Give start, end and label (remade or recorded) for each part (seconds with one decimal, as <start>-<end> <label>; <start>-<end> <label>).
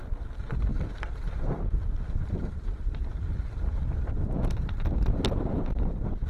0.0-6.3 recorded